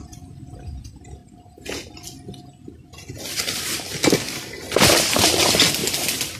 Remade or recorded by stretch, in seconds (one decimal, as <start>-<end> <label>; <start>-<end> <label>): 0.0-1.2 remade; 1.2-5.0 recorded; 5.0-5.8 remade; 5.8-6.4 recorded